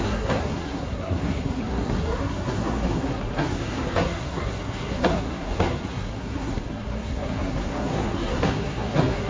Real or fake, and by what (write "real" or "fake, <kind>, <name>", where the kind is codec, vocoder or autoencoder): fake, codec, SNAC